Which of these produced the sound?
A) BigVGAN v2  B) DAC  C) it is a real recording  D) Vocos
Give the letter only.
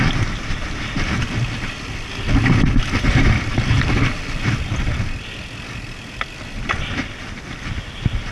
C